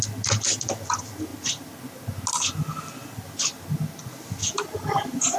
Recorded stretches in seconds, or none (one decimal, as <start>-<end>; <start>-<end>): 0.0-4.4